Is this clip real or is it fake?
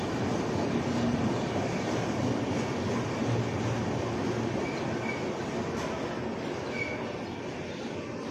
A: real